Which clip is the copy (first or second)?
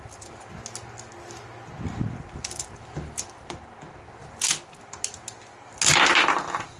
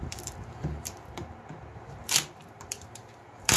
second